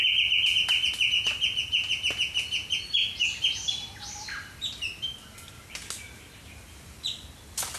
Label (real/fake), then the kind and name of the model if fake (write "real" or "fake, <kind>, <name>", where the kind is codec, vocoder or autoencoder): real